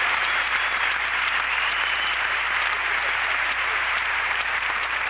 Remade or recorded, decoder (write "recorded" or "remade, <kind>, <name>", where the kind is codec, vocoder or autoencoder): remade, vocoder, BigVGAN v2